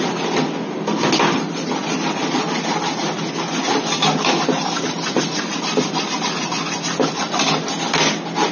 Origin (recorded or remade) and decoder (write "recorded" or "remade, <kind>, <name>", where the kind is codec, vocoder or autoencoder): recorded